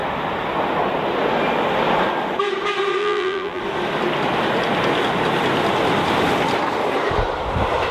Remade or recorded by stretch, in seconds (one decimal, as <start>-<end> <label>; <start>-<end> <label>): 0.0-3.0 recorded; 3.0-3.6 remade; 3.6-7.9 recorded